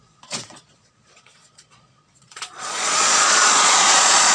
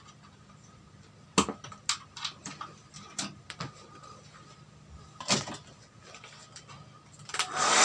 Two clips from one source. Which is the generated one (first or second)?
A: first